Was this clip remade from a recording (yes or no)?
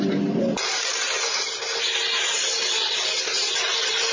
no